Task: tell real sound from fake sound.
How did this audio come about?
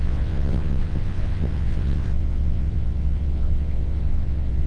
fake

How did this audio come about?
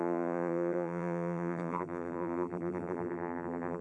fake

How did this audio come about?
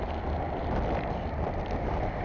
fake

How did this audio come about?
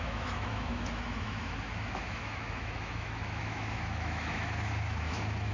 fake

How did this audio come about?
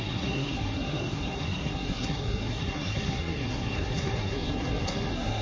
fake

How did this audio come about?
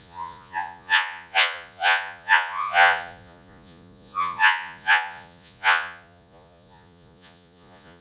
fake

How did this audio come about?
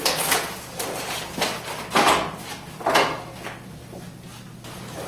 real